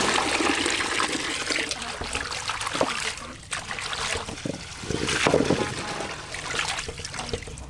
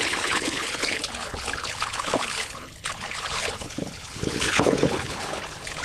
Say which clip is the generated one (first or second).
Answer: second